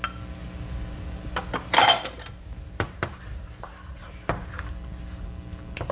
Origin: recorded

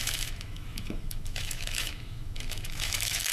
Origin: remade